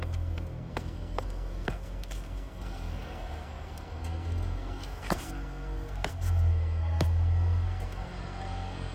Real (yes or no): no